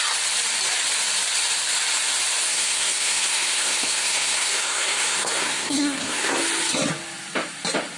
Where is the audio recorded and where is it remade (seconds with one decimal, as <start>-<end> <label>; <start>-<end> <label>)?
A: 0.0-2.5 recorded; 2.5-6.4 remade; 6.4-8.0 recorded